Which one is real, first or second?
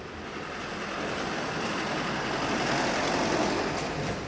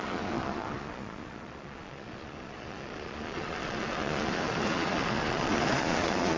first